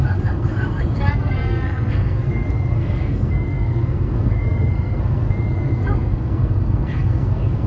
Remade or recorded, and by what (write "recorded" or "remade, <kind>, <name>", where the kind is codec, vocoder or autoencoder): remade, codec, SNAC